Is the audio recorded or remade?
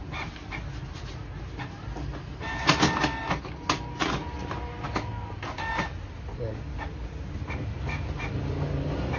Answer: recorded